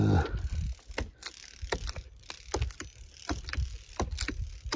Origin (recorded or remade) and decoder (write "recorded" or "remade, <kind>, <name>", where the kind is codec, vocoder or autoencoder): recorded